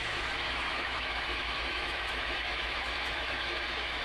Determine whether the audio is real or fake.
fake